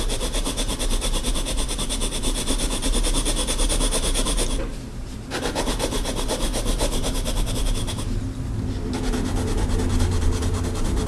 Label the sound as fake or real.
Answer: fake